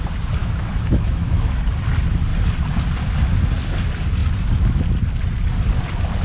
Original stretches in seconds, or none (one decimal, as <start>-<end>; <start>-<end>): 0.0-0.4; 1.7-6.2